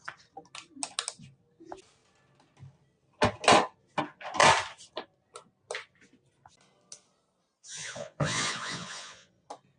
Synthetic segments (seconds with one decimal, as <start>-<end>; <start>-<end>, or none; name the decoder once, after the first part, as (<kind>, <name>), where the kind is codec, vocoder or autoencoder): 7.6-9.3 (vocoder, Vocos)